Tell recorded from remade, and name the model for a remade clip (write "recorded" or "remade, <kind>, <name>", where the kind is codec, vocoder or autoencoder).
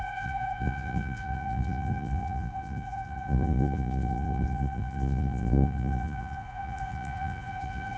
remade, vocoder, Vocos